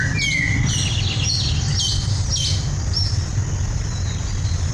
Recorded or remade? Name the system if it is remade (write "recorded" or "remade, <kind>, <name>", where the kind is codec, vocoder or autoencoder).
recorded